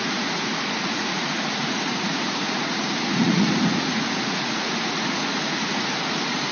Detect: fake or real fake